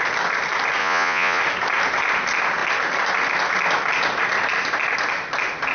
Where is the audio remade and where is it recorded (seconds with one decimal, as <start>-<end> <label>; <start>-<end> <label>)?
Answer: 0.0-0.8 recorded; 0.8-1.4 remade; 1.4-5.7 recorded